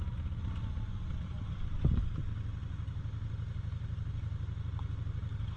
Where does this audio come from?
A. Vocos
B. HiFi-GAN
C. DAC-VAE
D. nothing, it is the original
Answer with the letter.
D